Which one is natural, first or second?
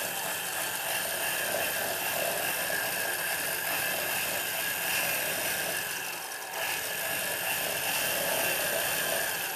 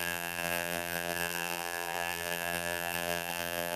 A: first